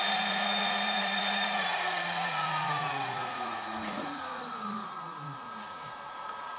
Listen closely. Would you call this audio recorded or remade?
remade